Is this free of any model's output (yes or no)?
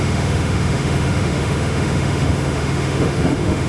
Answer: no